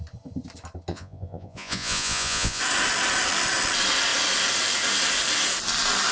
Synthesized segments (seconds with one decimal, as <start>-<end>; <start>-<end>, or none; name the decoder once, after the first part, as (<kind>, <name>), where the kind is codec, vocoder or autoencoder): 0.9-2.6 (vocoder, Vocos)